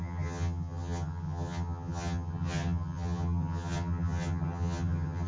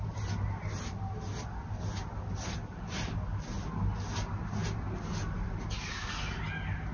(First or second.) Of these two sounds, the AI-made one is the first